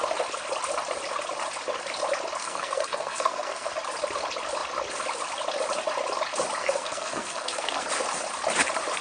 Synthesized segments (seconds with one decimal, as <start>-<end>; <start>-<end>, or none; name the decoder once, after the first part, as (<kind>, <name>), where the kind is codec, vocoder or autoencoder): 2.4-3.7 (codec, SNAC); 6.6-7.9